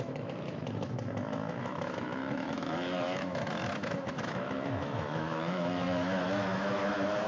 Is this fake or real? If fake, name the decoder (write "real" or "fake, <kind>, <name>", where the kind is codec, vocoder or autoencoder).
fake, autoencoder, DAC-VAE